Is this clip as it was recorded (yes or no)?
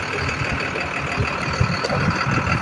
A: yes